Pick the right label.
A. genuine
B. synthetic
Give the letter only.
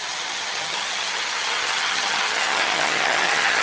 B